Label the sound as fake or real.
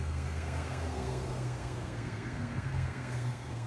fake